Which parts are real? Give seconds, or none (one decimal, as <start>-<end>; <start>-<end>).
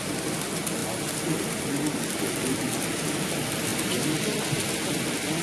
0.0-5.4